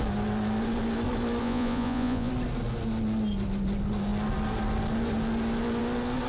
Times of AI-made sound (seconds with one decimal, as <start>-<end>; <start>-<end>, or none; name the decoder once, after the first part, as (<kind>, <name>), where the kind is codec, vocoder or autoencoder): 1.4-2.3 (vocoder, Vocos)